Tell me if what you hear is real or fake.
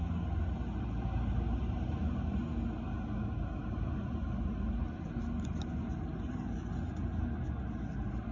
real